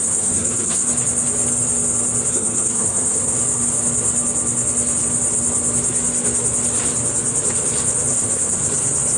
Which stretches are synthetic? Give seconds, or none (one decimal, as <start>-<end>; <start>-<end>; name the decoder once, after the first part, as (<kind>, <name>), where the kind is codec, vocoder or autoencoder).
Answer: 0.0-0.8 (codec, SNAC); 2.3-3.4; 8.1-8.6